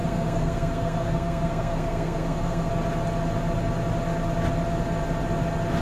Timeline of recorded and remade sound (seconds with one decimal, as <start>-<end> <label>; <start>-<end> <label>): 0.0-2.7 remade; 2.7-5.8 recorded